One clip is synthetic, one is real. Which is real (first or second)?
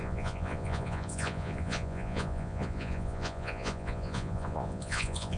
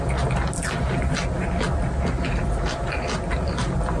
second